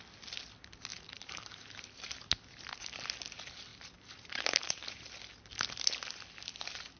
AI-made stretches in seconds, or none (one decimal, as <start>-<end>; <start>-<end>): 0.9-1.5; 3.7-5.1